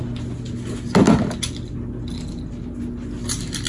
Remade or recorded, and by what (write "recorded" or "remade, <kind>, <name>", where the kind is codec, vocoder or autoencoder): recorded